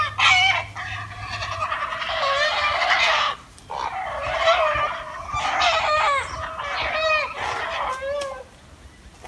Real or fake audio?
real